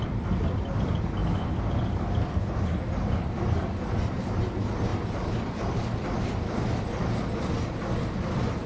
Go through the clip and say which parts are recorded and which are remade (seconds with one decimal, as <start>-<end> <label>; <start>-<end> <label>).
0.0-8.7 recorded